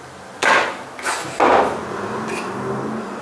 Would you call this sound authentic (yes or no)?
yes